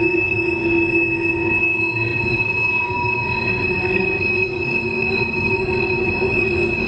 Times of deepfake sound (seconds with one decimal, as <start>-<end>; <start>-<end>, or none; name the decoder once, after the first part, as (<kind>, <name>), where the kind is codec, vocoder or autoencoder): 0.0-0.6 (codec, DAC); 1.6-6.9